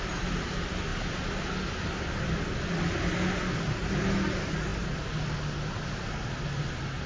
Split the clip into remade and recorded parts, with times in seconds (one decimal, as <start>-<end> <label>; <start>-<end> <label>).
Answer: 0.0-7.1 recorded